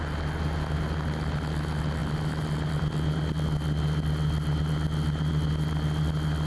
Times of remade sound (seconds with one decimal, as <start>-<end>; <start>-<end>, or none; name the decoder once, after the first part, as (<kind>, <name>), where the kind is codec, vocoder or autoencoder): none